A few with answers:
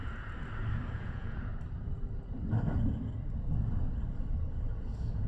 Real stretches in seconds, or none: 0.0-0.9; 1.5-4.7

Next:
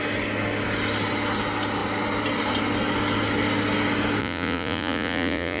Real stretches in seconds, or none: 0.0-4.2

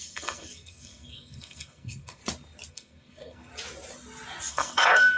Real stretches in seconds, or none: 2.2-2.7; 3.5-4.5

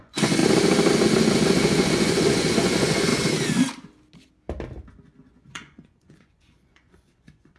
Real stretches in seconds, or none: 0.4-1.0; 3.1-5.3

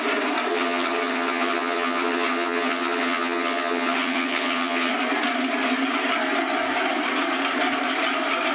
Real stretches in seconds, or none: 0.0-0.5; 4.9-8.5